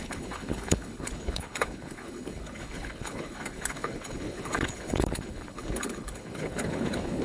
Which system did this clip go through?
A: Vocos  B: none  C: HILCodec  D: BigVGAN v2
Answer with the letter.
C